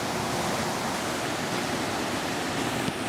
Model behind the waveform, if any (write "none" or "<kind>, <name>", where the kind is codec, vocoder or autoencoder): none